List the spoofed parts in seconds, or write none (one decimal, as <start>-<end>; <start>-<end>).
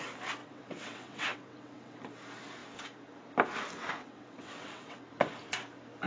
0.4-2.0; 4.0-5.0